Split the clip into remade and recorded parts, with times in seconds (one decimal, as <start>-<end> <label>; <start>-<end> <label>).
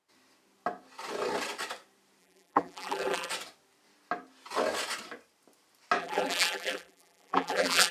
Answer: 0.0-2.2 recorded; 2.2-3.3 remade; 3.3-6.0 recorded; 6.0-7.9 remade